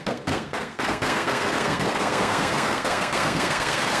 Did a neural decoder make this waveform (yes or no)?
yes